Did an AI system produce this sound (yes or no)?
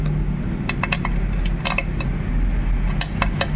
no